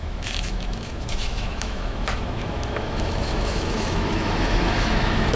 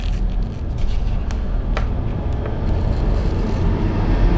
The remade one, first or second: first